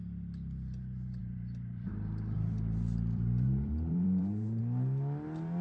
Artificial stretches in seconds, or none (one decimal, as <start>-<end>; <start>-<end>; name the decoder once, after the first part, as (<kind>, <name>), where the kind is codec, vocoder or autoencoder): 1.2-4.6 (vocoder, BigVGAN v2)